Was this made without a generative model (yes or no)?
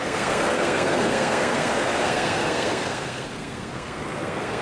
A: no